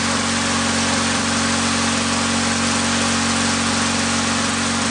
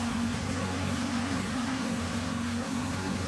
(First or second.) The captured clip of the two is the first